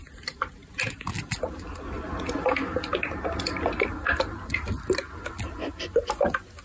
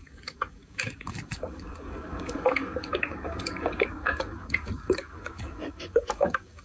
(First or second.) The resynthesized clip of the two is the second